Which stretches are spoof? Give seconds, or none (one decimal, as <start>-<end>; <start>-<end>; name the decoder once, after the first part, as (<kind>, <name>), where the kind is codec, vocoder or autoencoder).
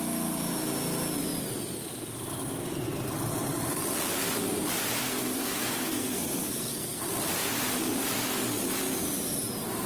5.0-7.0 (codec, SNAC)